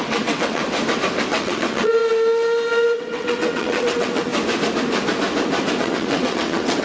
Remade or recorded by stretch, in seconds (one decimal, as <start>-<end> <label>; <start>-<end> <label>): 0.0-0.6 remade; 0.6-1.3 recorded; 1.3-2.0 remade; 2.0-3.0 recorded; 3.0-4.3 remade; 4.3-5.8 recorded; 5.8-6.8 remade